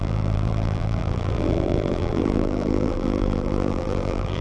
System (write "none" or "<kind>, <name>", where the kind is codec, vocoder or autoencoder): vocoder, BigVGAN v2